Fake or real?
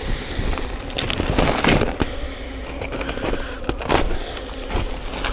real